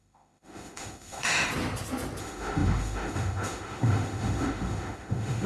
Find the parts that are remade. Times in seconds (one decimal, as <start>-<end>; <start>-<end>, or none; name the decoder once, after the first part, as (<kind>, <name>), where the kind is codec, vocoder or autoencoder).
0.0-1.5 (autoencoder, DAC-VAE); 2.2-5.5